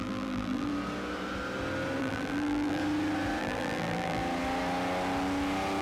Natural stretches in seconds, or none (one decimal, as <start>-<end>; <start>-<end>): 0.7-2.0; 2.8-3.4; 4.2-5.8